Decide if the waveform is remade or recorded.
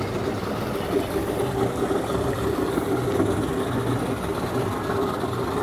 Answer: recorded